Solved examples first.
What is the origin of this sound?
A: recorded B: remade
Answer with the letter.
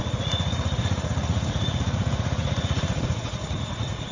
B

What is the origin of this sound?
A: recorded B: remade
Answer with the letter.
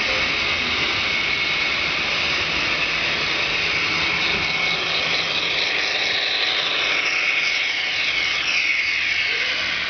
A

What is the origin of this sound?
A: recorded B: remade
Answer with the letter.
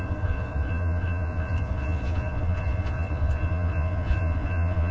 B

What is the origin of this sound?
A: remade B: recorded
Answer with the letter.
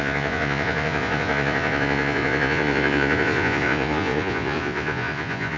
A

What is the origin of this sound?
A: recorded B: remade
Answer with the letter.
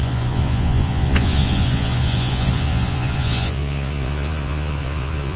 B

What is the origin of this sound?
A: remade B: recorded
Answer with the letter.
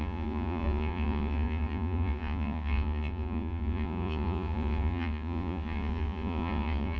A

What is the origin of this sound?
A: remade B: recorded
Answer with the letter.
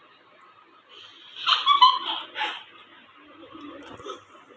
B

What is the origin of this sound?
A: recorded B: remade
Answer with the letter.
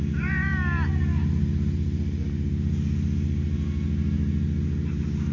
A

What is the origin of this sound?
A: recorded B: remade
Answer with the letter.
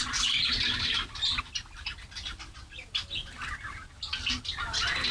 A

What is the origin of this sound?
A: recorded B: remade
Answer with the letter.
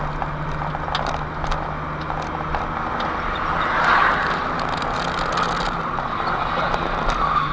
A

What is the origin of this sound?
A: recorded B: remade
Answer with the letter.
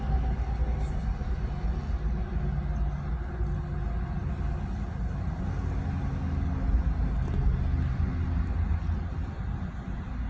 A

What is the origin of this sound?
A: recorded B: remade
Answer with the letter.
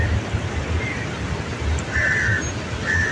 A